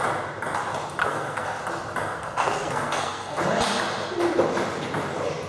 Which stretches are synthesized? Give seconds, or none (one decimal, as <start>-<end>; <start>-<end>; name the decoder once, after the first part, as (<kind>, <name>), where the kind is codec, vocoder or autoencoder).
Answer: 1.0-1.6 (codec, SNAC); 2.0-3.4